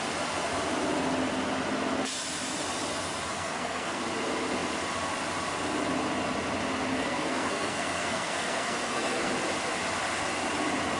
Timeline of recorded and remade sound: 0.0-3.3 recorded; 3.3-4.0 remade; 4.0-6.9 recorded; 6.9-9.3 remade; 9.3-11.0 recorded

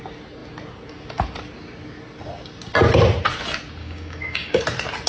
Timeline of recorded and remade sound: 0.0-3.8 recorded; 3.8-4.6 remade; 4.6-5.1 recorded

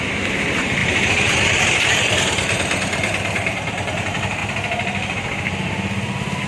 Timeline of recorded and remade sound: 0.0-4.4 remade; 4.4-6.5 recorded

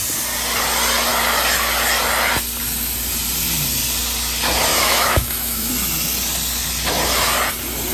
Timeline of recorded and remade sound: 0.0-4.7 recorded; 4.7-5.7 remade; 5.7-7.9 recorded

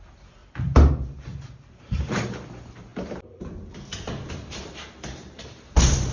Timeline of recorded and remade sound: 0.0-0.4 remade; 0.4-1.7 recorded; 1.7-2.9 remade; 2.9-4.3 recorded; 4.3-6.1 remade

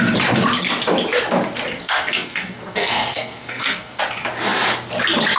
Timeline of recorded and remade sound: 0.0-1.8 recorded; 1.8-4.0 remade; 4.0-5.4 recorded

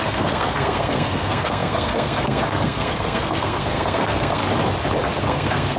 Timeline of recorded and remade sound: 0.0-4.4 remade; 4.4-5.2 recorded; 5.2-5.8 remade

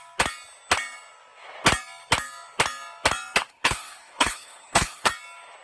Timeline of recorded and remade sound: 0.0-3.5 recorded; 3.5-5.1 remade; 5.1-5.6 recorded